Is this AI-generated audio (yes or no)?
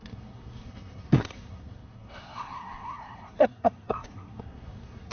yes